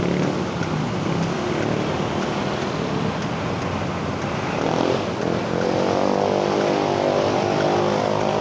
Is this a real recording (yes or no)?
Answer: yes